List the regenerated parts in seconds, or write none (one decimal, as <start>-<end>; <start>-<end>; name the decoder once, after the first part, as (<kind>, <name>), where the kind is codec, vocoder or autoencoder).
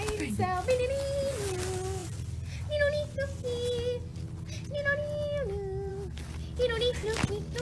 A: 2.0-2.7 (vocoder, BigVGAN v2)